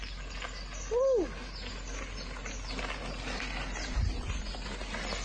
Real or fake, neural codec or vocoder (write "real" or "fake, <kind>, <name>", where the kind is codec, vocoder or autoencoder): real